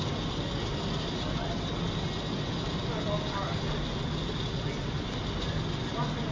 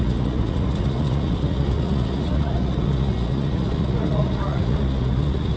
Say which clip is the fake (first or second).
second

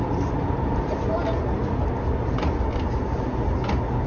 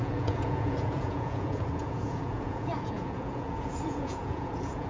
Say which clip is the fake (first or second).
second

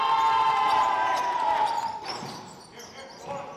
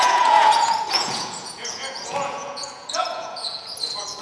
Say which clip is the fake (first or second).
second